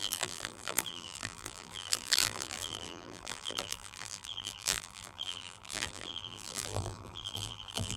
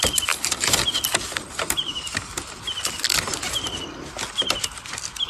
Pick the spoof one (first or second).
first